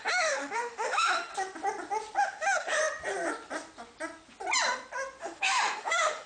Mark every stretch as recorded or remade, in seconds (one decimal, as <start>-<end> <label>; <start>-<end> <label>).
0.0-1.3 remade; 1.3-2.2 recorded; 2.2-2.8 remade; 2.8-5.2 recorded; 5.2-6.3 remade